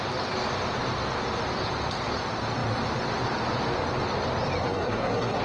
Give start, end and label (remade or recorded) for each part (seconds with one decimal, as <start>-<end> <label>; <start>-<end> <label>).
0.0-4.6 recorded; 4.6-5.4 remade